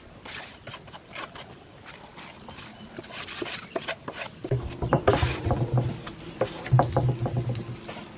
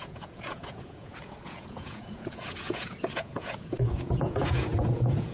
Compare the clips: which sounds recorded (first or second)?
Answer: first